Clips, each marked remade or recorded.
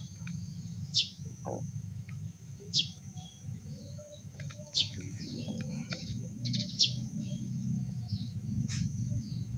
remade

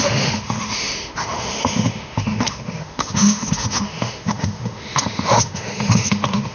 remade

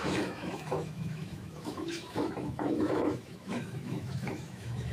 remade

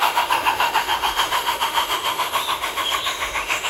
remade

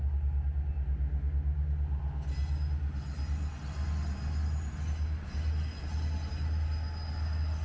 recorded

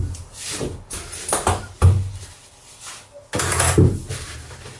recorded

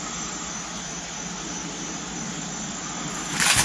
recorded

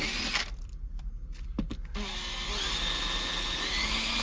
recorded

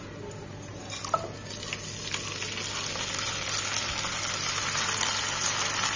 recorded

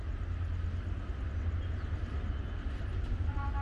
recorded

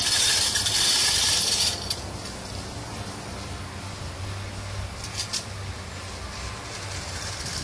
recorded